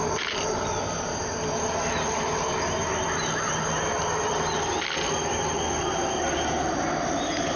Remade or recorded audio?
recorded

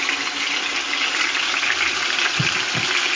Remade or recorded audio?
recorded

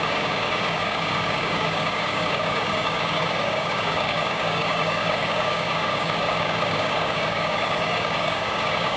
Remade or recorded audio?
remade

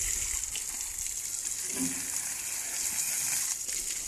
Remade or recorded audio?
recorded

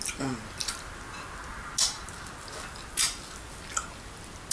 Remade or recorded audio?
recorded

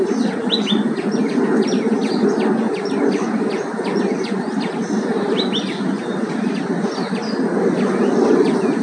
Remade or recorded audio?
recorded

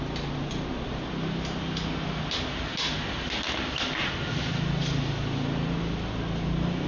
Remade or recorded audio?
recorded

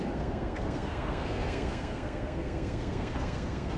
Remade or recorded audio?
remade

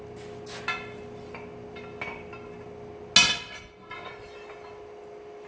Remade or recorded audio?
recorded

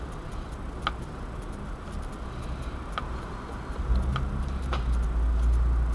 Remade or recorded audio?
recorded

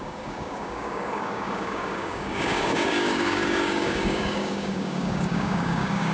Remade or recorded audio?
remade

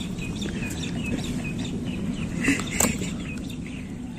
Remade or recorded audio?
recorded